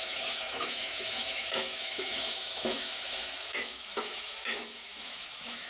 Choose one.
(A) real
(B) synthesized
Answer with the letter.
B